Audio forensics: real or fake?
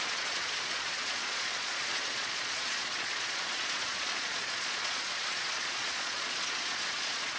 fake